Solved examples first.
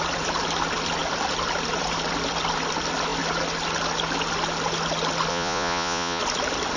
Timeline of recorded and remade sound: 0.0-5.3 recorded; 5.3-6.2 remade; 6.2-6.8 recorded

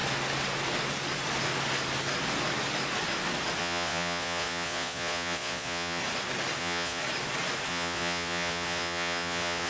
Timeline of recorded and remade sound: 0.0-3.6 recorded; 3.6-6.0 remade; 6.0-6.6 recorded; 6.6-7.0 remade; 7.0-7.7 recorded; 7.7-9.7 remade

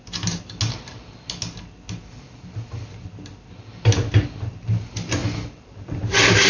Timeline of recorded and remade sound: 0.0-6.5 recorded